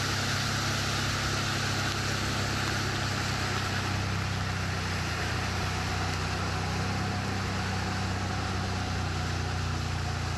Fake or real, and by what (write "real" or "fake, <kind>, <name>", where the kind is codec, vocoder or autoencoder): real